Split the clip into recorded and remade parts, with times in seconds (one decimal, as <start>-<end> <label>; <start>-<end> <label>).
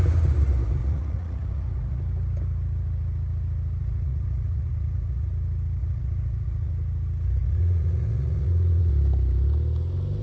0.0-0.8 recorded; 0.8-2.0 remade; 2.0-3.8 recorded; 3.8-5.3 remade; 5.3-5.8 recorded; 5.8-6.7 remade; 6.7-7.4 recorded; 7.4-8.9 remade; 8.9-10.2 recorded